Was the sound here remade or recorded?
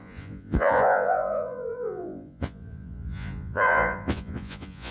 remade